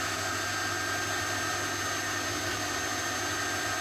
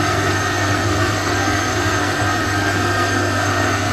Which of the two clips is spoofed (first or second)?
second